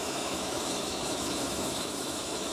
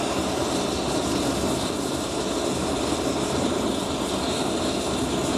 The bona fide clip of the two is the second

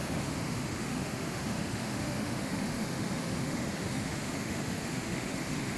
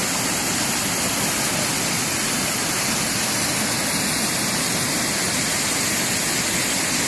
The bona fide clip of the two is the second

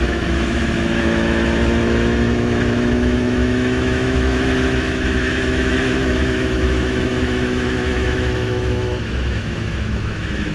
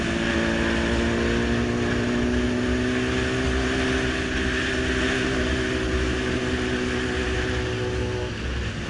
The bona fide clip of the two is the second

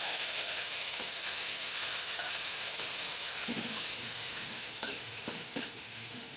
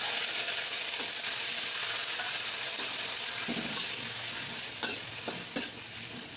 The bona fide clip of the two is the second